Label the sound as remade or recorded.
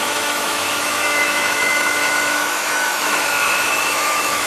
remade